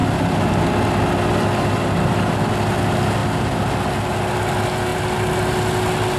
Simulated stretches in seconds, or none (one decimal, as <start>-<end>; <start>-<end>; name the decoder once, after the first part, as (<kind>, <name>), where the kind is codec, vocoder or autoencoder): 3.2-3.7 (vocoder, BigVGAN v2)